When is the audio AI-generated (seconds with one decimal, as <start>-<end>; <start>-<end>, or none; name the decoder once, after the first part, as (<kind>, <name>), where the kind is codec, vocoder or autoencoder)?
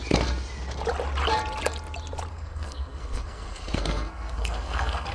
2.3-5.1 (codec, SNAC)